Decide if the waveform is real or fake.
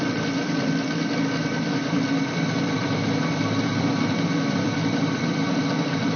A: fake